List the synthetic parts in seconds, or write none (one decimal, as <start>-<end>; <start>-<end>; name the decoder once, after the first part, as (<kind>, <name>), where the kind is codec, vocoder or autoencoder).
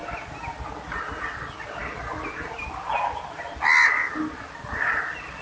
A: none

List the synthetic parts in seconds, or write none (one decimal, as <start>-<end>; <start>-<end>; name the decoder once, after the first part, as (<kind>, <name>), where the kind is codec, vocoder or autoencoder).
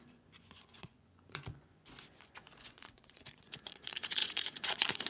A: 0.0-5.1 (vocoder, Vocos)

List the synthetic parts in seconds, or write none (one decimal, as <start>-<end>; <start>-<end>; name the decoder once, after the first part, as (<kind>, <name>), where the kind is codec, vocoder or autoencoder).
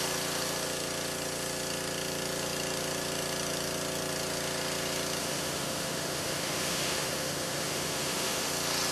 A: 5.2-8.5 (autoencoder, DAC-VAE)